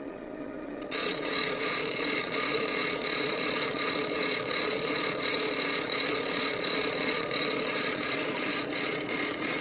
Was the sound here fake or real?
fake